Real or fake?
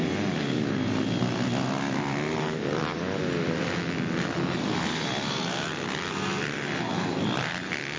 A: real